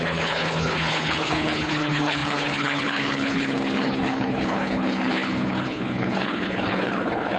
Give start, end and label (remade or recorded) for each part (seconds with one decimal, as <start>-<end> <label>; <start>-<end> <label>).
0.0-7.4 remade